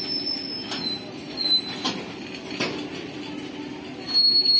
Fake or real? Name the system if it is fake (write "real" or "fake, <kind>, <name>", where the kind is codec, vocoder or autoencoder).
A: real